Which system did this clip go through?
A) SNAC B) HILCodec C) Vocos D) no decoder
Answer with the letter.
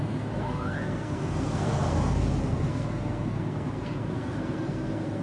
A